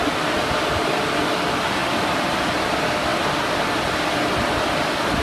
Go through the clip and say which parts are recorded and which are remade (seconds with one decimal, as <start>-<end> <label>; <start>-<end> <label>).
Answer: 0.0-5.2 recorded